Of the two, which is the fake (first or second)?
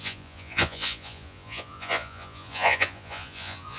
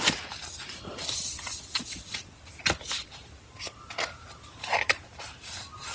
first